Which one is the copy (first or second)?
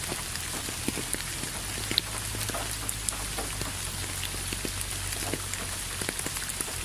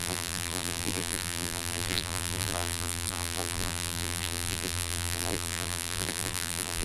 second